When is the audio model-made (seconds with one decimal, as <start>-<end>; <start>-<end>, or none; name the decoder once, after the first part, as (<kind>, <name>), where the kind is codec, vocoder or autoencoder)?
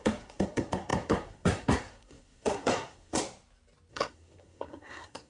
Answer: 0.0-3.2 (codec, SNAC); 3.9-5.3